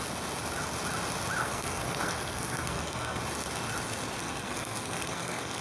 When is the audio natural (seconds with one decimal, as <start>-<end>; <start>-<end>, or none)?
0.0-1.4; 3.2-4.2